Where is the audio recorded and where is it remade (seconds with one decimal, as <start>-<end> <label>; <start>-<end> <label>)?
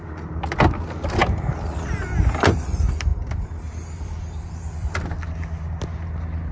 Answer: 0.0-6.5 recorded